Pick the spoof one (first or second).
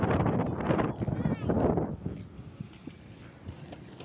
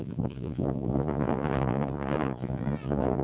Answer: second